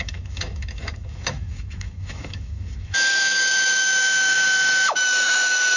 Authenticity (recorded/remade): remade